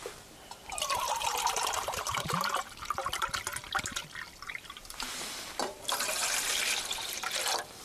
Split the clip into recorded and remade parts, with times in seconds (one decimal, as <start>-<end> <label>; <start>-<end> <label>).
0.0-4.0 remade; 4.0-4.5 recorded; 4.5-6.2 remade; 6.2-7.8 recorded